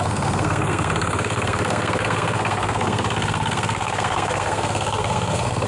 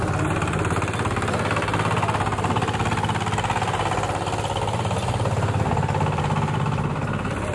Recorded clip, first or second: second